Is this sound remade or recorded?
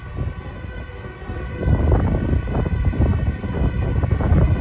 recorded